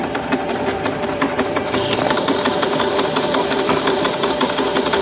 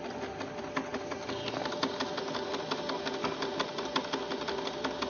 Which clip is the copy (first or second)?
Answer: first